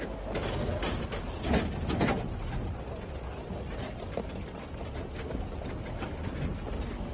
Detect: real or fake real